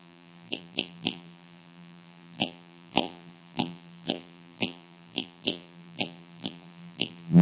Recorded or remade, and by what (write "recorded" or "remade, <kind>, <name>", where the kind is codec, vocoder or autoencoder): remade, vocoder, BigVGAN v2